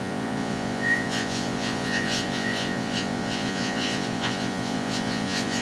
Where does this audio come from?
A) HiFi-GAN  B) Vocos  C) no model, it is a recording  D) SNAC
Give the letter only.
B